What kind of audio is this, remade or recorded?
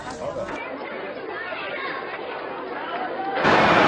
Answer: recorded